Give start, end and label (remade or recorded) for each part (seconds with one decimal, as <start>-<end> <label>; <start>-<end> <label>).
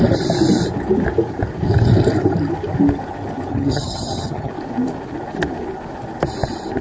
0.0-3.5 recorded; 3.5-4.5 remade; 4.5-6.8 recorded